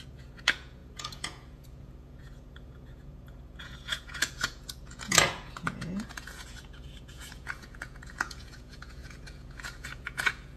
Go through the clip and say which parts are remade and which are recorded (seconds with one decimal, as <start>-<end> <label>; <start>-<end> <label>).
0.0-10.6 remade